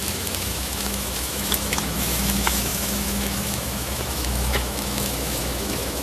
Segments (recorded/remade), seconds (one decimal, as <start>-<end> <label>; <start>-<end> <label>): 0.0-6.0 remade